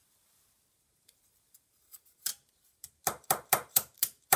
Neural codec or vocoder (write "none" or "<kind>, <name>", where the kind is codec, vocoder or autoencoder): vocoder, BigVGAN v2